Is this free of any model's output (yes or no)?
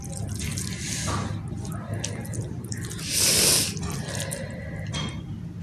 yes